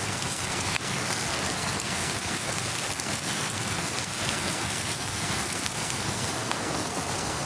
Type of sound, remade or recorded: remade